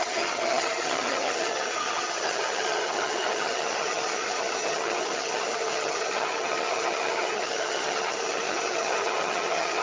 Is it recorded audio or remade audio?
remade